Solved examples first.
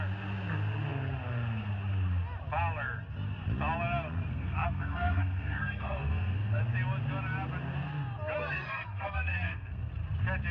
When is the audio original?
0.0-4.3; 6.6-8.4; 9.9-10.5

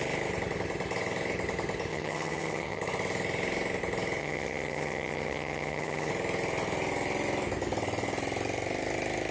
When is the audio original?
0.0-1.9; 2.8-4.2; 6.1-9.3

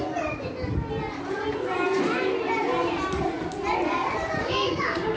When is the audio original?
0.0-4.4

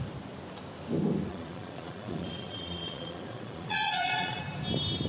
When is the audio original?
0.0-1.3; 4.4-5.1

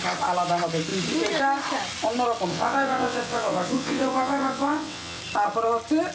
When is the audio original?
0.0-2.5; 5.2-6.1